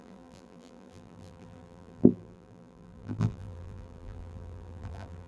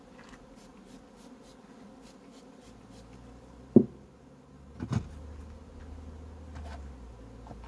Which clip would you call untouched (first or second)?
second